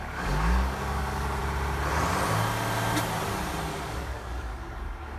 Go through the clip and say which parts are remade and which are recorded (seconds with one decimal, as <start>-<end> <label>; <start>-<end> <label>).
0.0-1.4 remade; 1.4-3.7 recorded; 3.7-5.2 remade